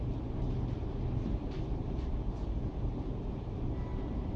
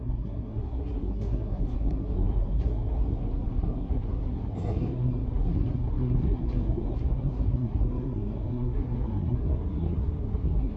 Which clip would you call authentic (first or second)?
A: first